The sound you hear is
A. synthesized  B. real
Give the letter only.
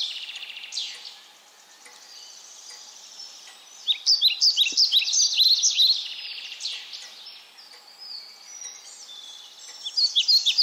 B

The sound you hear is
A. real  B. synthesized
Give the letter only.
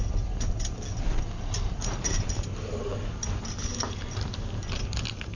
A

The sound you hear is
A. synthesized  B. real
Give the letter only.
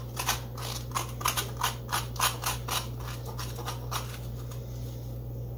B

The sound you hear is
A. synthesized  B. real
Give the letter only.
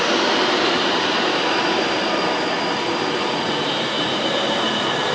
A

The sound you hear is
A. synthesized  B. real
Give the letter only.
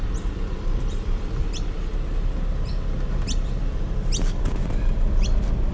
A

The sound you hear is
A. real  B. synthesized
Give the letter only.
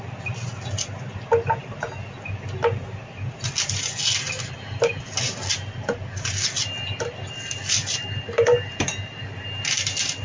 A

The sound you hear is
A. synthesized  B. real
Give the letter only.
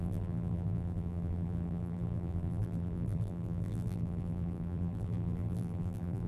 A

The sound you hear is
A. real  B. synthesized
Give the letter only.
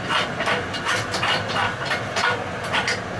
A